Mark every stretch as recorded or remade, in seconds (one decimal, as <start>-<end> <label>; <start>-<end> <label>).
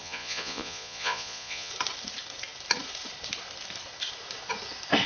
0.0-1.7 remade; 1.7-5.1 recorded